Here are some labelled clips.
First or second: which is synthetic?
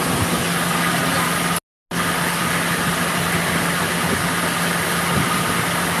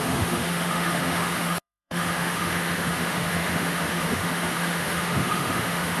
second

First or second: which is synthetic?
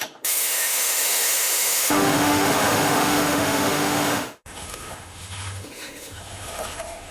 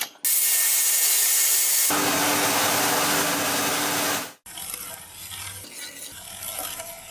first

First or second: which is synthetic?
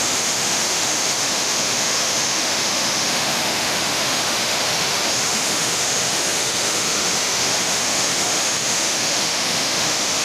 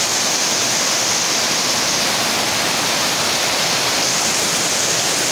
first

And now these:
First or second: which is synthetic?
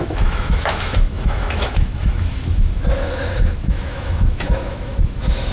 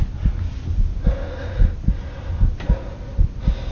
first